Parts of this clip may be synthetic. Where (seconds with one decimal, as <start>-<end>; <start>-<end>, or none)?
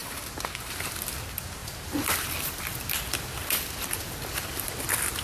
1.6-4.7